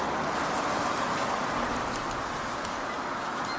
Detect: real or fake real